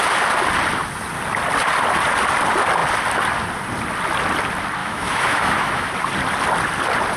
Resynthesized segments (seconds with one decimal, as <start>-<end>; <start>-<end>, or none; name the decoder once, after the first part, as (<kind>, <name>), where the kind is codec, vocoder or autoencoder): 4.8-5.9 (autoencoder, DAC-VAE)